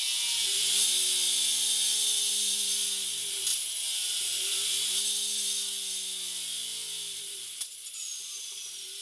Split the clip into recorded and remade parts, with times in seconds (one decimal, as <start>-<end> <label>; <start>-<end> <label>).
0.0-9.0 recorded

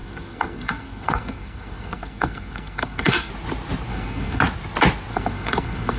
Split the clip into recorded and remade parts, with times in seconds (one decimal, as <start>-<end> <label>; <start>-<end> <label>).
0.0-3.3 remade; 3.3-3.9 recorded; 3.9-4.4 remade; 4.4-5.1 recorded; 5.1-6.0 remade

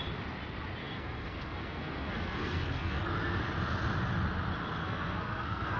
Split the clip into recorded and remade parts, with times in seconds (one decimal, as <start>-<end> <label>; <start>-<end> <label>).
0.0-0.8 recorded; 0.8-3.0 remade; 3.0-4.8 recorded; 4.8-5.8 remade

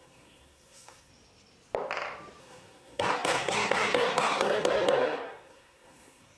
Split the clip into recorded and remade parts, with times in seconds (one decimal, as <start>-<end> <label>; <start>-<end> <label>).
0.0-1.1 remade; 1.1-2.4 recorded; 2.4-6.4 remade

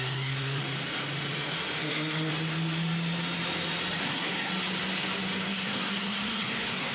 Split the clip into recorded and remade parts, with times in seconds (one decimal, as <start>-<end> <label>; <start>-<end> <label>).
0.0-0.6 remade; 0.6-1.8 recorded; 1.8-2.3 remade; 2.3-4.0 recorded; 4.0-4.5 remade; 4.5-5.5 recorded; 5.5-6.9 remade

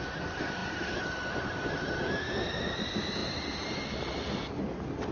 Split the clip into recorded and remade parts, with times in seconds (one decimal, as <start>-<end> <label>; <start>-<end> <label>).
0.0-5.1 recorded

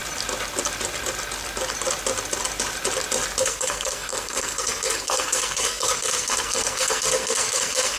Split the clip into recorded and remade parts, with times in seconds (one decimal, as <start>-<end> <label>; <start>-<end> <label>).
0.0-3.4 recorded; 3.4-8.0 remade

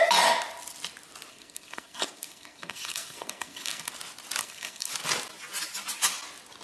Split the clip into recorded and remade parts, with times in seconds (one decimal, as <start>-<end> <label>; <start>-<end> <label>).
0.0-1.3 recorded; 1.3-3.9 remade; 3.9-4.4 recorded; 4.4-4.9 remade; 4.9-6.6 recorded